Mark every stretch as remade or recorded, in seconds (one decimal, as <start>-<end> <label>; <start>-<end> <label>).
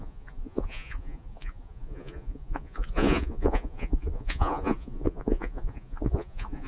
0.0-6.7 remade